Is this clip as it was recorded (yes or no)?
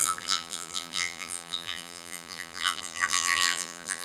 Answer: no